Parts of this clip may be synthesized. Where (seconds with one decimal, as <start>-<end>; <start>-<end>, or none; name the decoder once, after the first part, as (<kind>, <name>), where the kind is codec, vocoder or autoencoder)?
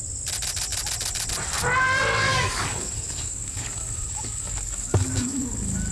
2.3-5.9 (codec, DAC)